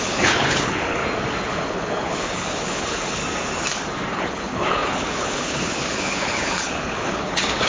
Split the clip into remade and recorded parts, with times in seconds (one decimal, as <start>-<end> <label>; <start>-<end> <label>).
0.0-1.0 remade; 1.0-1.5 recorded; 1.5-3.2 remade; 3.2-4.1 recorded; 4.1-7.7 remade